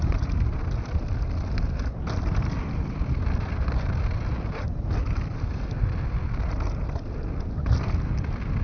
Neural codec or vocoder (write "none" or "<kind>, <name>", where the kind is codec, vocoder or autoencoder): none